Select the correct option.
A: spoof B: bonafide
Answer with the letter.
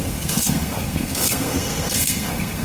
A